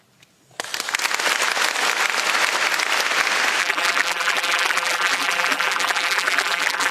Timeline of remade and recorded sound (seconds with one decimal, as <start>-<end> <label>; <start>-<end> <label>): 0.0-3.6 recorded; 3.6-6.9 remade

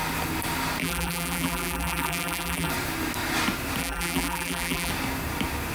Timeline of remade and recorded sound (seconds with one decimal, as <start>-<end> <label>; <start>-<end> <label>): 0.0-0.8 recorded; 0.8-2.7 remade; 2.7-3.8 recorded; 3.8-4.9 remade; 4.9-5.7 recorded

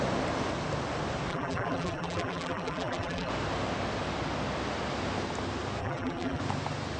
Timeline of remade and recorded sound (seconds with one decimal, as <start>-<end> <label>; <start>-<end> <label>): 0.0-1.3 recorded; 1.3-3.3 remade; 3.3-5.8 recorded; 5.8-6.4 remade; 6.4-7.0 recorded

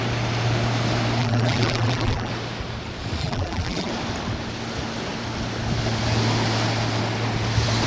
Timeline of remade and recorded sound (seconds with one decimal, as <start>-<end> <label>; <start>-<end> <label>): 0.0-1.2 recorded; 1.2-2.3 remade; 2.3-3.2 recorded; 3.2-3.9 remade; 3.9-7.9 recorded

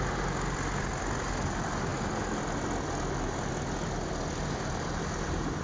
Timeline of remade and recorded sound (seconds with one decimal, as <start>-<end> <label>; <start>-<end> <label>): 0.0-5.6 recorded

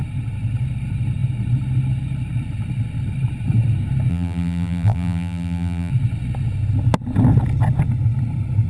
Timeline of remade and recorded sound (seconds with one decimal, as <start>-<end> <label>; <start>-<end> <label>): 0.0-4.1 recorded; 4.1-5.9 remade; 5.9-8.7 recorded